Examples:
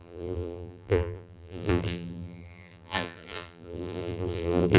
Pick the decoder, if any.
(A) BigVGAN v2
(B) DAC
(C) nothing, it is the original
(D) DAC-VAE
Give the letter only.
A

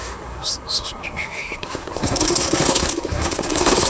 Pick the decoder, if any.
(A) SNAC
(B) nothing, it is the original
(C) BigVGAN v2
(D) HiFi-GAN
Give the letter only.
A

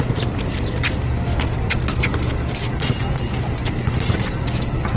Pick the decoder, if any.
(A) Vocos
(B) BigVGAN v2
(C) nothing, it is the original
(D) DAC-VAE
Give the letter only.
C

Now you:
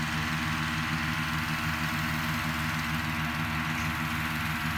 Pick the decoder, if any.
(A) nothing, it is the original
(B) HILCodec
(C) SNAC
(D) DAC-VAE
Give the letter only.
A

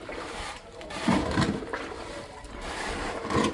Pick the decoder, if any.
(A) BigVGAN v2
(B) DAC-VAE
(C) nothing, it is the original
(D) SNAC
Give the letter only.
A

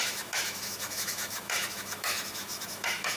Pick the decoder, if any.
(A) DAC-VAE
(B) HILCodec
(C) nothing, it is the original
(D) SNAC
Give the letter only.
A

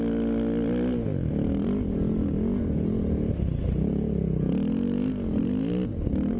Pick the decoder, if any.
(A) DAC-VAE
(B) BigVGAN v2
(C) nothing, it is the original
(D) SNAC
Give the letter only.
C